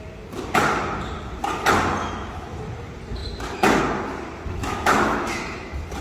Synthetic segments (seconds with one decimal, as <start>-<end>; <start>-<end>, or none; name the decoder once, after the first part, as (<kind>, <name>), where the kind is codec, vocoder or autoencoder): 2.0-2.6 (autoencoder, DAC-VAE); 4.6-5.4